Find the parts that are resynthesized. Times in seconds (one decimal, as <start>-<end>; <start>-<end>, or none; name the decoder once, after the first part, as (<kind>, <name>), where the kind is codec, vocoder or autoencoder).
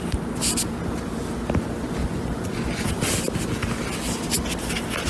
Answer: 2.0-2.9 (vocoder, Vocos)